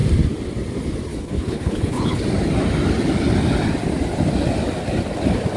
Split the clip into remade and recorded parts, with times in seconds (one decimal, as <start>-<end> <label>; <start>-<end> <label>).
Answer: 0.0-1.1 recorded; 1.1-2.2 remade; 2.2-5.6 recorded